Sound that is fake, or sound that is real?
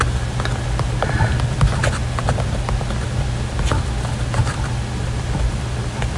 real